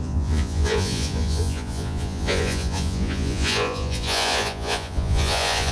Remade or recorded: remade